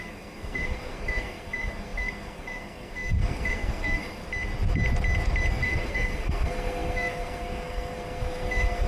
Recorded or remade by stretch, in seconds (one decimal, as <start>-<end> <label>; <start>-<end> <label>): 0.0-4.2 remade; 4.2-5.5 recorded; 5.5-8.9 remade

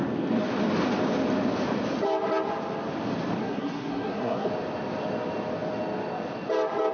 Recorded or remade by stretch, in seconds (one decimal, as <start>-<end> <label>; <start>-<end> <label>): 0.0-3.4 recorded; 3.4-4.5 remade; 4.5-6.9 recorded

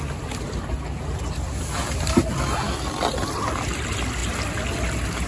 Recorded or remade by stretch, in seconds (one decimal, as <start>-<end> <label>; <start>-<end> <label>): 0.0-5.3 recorded

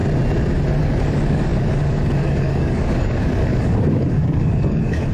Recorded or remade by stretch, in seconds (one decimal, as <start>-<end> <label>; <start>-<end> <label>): 0.0-0.8 recorded; 0.8-5.1 remade

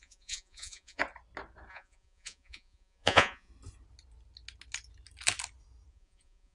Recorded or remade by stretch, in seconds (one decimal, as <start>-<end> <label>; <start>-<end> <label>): 0.0-1.0 remade; 1.0-1.7 recorded; 1.7-3.5 remade; 3.5-5.9 recorded; 5.9-6.5 remade

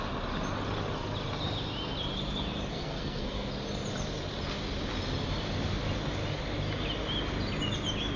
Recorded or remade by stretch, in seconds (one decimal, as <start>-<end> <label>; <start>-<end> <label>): 0.0-2.7 recorded; 2.7-3.5 remade; 3.5-8.2 recorded

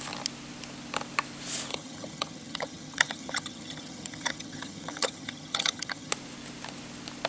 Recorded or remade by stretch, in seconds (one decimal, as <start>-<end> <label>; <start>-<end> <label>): 0.0-1.7 recorded; 1.7-6.1 remade; 6.1-7.3 recorded